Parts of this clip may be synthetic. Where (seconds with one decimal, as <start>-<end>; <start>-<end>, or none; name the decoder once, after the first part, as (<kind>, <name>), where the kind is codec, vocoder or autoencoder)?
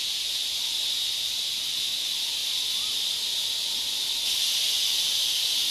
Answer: none